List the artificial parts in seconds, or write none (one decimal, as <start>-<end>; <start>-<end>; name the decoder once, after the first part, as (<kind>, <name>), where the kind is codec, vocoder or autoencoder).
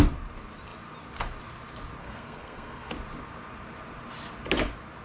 2.0-2.9 (codec, SNAC)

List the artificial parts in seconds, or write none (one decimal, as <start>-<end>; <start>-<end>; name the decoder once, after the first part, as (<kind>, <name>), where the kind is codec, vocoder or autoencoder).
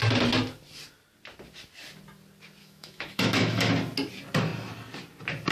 2.6-3.7 (autoencoder, DAC-VAE)